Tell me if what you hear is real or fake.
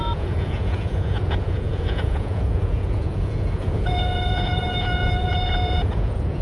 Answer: fake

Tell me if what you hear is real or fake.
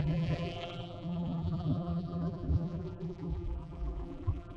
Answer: fake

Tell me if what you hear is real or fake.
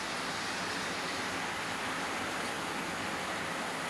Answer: real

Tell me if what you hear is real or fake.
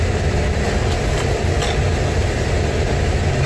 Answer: real